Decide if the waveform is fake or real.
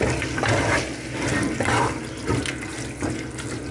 real